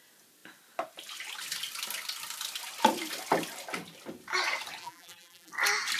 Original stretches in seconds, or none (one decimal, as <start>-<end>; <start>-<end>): 0.0-4.8; 5.5-6.0